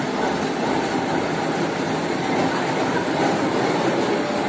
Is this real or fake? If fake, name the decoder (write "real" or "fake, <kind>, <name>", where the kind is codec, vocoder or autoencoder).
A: real